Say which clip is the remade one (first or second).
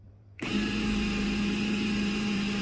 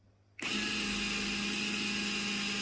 first